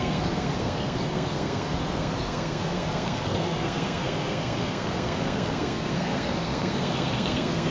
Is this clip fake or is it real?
fake